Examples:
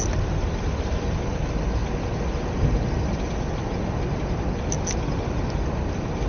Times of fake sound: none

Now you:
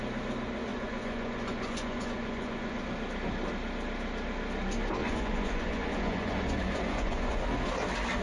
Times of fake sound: 0.7-2.8 (vocoder, Vocos); 5.0-7.4

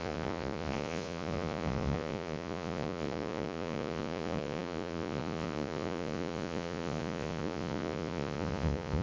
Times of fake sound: 0.0-9.0 (vocoder, Vocos)

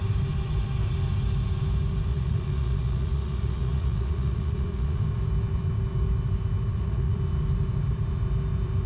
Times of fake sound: 2.1-5.0 (vocoder, Vocos); 6.7-7.2

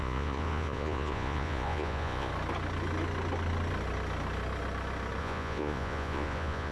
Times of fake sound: 0.0-2.3 (vocoder, Vocos); 5.2-6.7